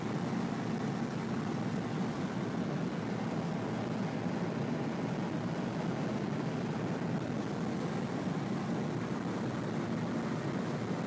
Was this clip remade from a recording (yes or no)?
no